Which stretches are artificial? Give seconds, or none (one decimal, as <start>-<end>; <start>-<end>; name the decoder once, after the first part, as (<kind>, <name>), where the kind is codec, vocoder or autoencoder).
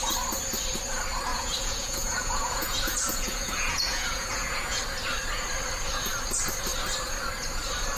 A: 1.3-4.8 (vocoder, Vocos)